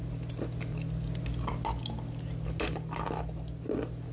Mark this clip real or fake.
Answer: real